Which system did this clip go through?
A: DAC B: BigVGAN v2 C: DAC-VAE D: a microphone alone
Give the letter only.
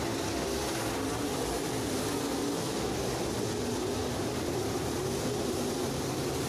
D